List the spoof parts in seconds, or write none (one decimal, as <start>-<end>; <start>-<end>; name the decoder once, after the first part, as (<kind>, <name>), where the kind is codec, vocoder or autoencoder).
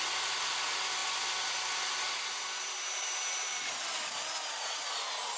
none